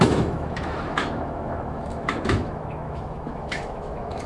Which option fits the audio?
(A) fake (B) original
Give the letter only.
A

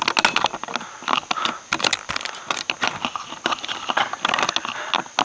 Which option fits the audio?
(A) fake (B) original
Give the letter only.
B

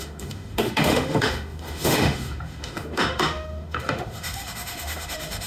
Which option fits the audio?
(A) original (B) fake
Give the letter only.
B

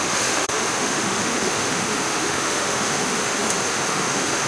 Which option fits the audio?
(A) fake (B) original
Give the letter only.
A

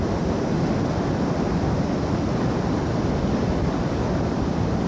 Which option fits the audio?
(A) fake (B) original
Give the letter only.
B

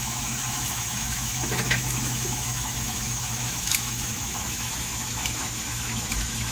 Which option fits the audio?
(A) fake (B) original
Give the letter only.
A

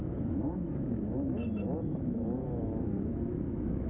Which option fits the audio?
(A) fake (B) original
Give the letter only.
A